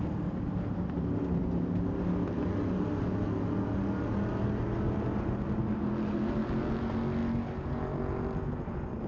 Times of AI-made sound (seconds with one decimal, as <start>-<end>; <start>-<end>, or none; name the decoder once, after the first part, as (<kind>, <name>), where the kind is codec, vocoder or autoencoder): none